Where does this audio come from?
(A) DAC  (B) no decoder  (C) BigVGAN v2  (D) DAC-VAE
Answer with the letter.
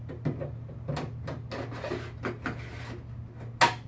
B